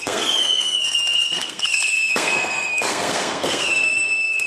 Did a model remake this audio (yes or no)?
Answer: yes